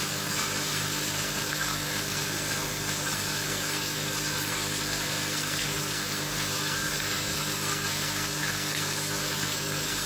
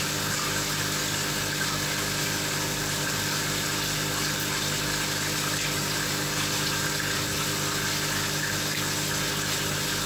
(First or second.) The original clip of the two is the second